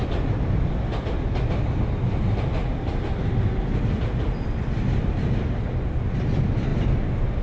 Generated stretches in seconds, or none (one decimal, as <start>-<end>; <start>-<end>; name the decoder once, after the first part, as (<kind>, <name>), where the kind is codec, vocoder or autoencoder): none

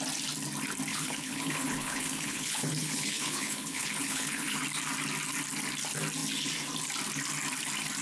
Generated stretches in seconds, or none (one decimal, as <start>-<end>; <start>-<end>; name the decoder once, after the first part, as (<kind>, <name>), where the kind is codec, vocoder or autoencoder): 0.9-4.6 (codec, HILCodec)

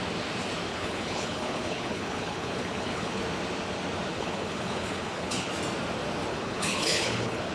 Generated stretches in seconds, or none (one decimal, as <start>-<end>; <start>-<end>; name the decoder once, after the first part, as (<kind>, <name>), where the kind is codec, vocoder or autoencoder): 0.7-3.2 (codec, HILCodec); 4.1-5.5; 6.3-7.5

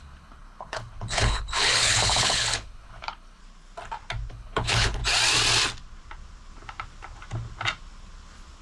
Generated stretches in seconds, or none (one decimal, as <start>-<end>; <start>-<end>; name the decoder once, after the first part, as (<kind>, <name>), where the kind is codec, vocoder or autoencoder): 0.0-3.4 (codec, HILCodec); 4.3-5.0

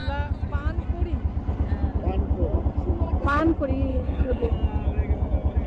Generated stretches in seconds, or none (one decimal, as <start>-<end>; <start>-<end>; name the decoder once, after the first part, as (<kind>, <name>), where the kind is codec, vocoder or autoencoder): 3.9-4.5 (codec, HILCodec)

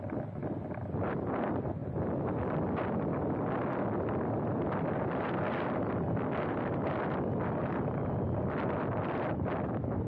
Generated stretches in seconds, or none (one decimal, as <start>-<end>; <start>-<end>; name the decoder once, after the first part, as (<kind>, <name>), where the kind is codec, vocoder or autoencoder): none

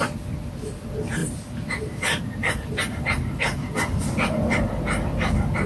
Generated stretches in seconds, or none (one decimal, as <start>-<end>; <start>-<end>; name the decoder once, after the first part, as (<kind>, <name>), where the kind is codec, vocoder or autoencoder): none

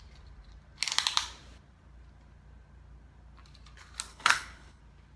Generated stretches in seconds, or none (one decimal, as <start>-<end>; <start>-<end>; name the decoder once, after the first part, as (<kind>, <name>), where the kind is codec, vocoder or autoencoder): 4.1-4.8 (codec, HILCodec)